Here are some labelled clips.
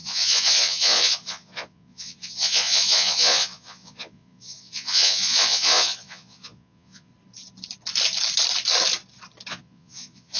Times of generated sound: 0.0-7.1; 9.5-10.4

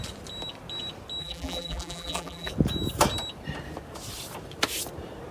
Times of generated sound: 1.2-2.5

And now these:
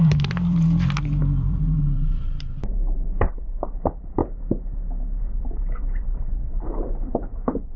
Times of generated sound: 0.0-4.2; 5.2-7.8